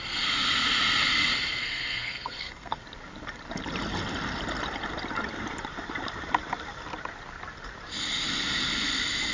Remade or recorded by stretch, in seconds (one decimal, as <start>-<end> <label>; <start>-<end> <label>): 0.0-1.6 recorded; 1.6-2.8 remade; 2.8-9.3 recorded